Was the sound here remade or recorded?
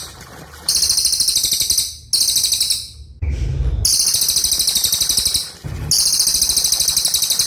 recorded